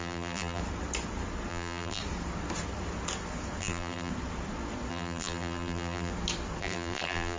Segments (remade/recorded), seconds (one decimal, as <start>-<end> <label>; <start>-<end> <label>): 0.0-0.6 remade; 0.6-1.5 recorded; 1.5-2.0 remade; 2.0-3.6 recorded; 3.6-4.1 remade; 4.1-4.9 recorded; 4.9-6.1 remade; 6.1-6.6 recorded; 6.6-7.4 remade